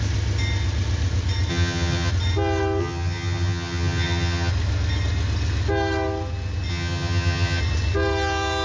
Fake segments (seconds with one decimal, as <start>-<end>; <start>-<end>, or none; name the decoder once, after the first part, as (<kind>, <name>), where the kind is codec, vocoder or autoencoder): 1.5-2.1 (vocoder, HiFi-GAN); 2.8-4.5; 6.7-7.6